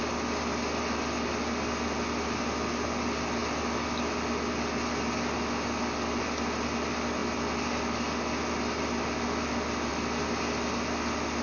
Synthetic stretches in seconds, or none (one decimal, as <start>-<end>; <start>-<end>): none